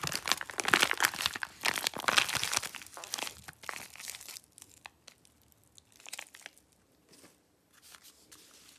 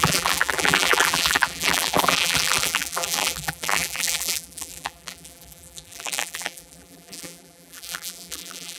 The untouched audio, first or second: first